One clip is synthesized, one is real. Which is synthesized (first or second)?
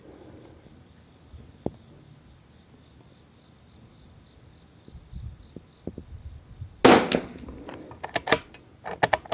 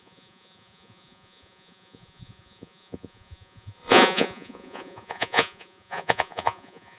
second